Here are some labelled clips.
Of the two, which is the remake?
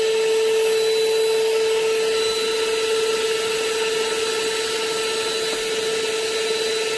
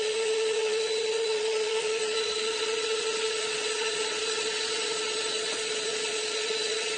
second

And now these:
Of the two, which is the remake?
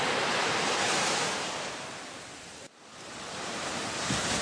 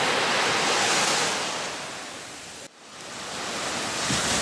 first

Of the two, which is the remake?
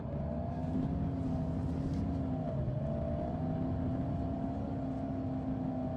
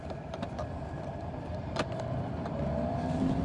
second